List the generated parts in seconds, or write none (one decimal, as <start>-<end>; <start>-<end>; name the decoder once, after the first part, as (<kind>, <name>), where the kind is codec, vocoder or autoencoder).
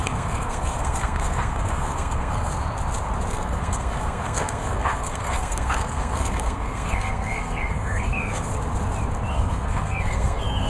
0.0-2.5 (codec, SNAC); 3.3-8.5; 9.3-10.7